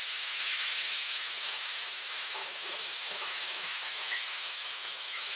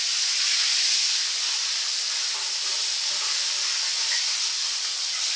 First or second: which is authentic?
second